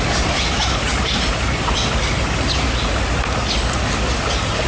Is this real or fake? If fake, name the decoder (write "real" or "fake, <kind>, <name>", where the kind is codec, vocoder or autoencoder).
real